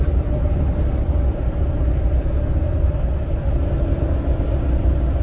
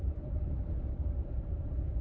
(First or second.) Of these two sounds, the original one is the first